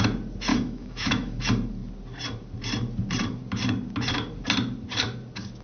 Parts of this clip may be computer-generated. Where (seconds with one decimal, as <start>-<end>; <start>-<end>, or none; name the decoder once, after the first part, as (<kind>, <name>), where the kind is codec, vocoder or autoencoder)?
0.5-1.4 (autoencoder, DAC-VAE)